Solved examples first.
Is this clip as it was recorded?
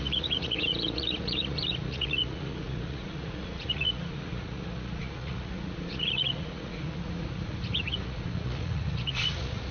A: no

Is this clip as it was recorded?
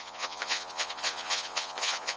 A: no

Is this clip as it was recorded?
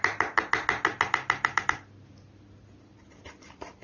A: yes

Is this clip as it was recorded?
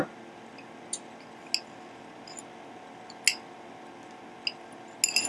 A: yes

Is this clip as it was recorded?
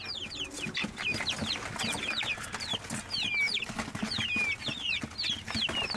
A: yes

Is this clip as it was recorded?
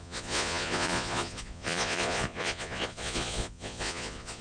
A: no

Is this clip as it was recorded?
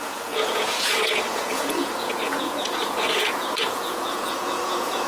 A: no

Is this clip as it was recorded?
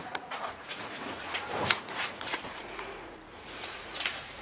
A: no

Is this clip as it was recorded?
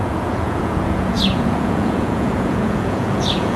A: no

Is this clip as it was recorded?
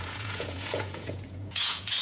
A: no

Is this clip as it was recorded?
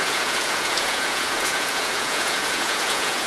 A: no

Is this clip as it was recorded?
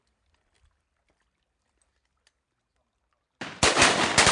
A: yes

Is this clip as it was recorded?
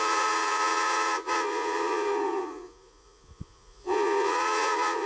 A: no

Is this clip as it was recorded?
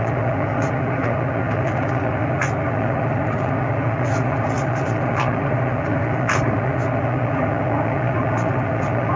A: no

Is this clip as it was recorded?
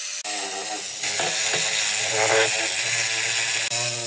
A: yes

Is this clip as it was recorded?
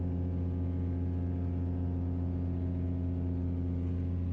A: yes